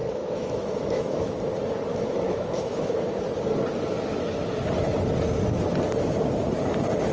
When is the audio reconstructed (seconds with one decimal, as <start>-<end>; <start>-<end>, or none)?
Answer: 0.0-1.4; 1.9-3.2